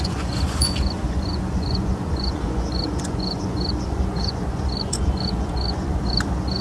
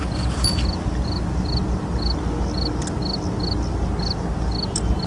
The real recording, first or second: second